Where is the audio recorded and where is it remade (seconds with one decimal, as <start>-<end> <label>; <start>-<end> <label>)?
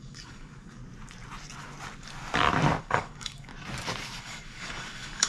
0.0-0.8 remade; 0.8-2.8 recorded; 2.8-3.5 remade; 3.5-4.2 recorded; 4.2-5.3 remade